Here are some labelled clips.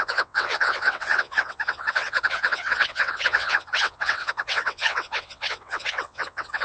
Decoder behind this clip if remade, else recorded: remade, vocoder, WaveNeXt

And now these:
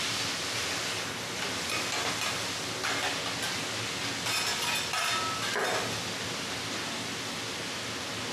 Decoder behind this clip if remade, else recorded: recorded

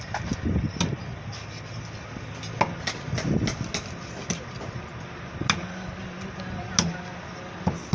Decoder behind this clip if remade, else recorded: recorded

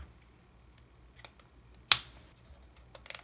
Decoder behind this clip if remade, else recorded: recorded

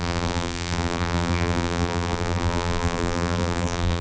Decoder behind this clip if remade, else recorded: remade, vocoder, BigVGAN v2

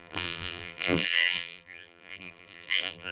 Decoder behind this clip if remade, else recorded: remade, vocoder, BigVGAN v2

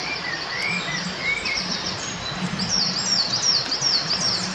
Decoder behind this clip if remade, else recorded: recorded